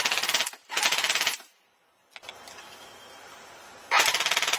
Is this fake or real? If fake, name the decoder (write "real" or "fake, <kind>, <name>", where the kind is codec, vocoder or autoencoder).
fake, vocoder, BigVGAN v2